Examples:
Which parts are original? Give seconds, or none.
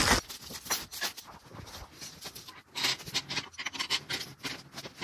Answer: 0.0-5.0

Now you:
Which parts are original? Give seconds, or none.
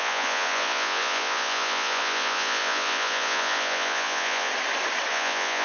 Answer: 4.5-5.1